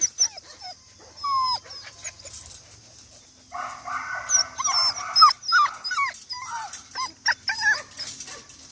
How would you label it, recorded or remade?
recorded